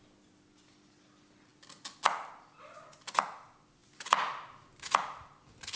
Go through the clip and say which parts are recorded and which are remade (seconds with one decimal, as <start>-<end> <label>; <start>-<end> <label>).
0.0-5.8 recorded